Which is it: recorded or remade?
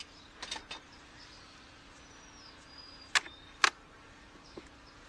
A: recorded